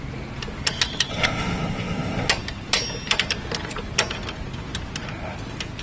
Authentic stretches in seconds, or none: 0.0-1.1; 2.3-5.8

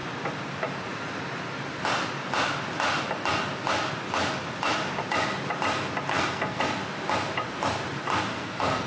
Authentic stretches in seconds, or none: 0.0-6.1; 6.6-8.3